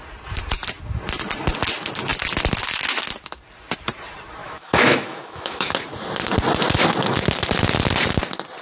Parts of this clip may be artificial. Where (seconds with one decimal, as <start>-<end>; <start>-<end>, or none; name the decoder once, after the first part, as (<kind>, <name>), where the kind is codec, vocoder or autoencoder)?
4.4-5.7 (autoencoder, DAC-VAE)